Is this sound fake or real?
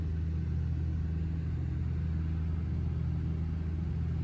real